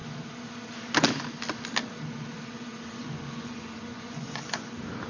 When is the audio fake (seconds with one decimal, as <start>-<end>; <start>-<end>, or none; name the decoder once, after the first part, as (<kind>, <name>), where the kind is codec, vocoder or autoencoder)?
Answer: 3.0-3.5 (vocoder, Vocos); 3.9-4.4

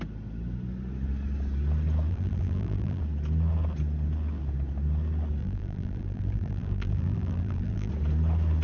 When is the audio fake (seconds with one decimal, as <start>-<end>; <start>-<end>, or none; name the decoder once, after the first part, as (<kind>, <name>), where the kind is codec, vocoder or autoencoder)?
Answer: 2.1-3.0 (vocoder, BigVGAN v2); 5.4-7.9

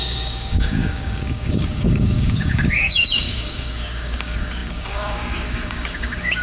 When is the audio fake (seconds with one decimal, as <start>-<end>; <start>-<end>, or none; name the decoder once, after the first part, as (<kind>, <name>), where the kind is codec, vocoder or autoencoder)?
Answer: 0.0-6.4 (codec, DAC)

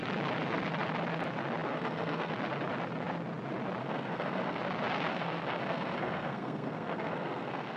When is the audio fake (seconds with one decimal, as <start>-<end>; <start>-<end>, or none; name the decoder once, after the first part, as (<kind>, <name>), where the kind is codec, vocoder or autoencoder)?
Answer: 1.7-2.3 (codec, SNAC); 3.8-4.6; 5.1-7.8

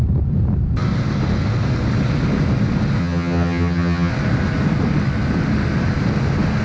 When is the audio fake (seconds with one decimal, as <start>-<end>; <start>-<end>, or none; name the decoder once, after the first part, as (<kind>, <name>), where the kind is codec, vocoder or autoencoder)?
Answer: 3.0-4.1 (vocoder, HiFi-GAN)

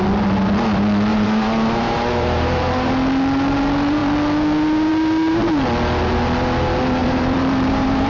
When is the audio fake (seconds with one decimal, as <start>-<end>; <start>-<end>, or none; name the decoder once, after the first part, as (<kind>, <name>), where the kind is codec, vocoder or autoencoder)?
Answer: 1.1-2.9 (vocoder, BigVGAN v2); 7.0-8.1

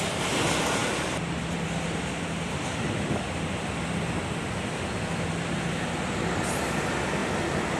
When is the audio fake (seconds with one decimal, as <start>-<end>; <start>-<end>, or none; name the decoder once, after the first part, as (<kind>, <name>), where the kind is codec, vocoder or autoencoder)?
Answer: none

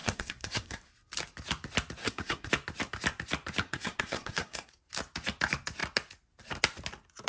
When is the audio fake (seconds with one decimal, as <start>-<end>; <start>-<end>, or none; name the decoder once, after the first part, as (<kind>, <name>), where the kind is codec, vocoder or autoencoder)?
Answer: 0.0-0.9 (codec, SNAC); 2.0-2.5; 3.6-4.7